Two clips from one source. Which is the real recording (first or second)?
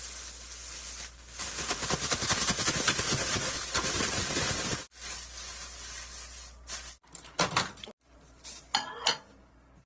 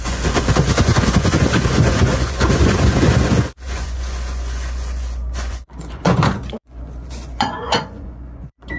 first